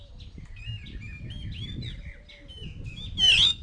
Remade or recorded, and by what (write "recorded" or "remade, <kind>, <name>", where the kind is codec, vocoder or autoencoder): recorded